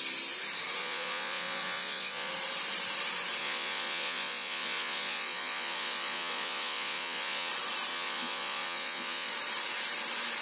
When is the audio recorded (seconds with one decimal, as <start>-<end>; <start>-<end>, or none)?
0.0-0.8; 2.3-3.4; 7.5-7.9; 9.3-10.4